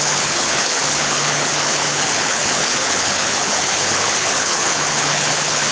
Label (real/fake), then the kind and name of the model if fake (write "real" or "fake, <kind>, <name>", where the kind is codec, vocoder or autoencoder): fake, codec, HILCodec